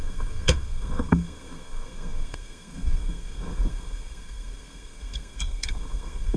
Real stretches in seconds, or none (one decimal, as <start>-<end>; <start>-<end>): none